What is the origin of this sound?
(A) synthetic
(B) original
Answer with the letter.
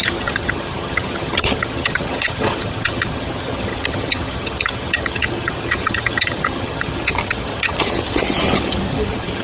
A